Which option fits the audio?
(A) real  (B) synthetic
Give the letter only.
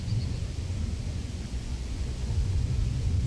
B